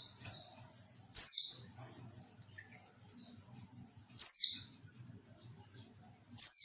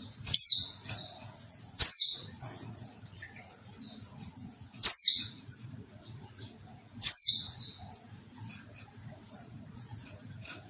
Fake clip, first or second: second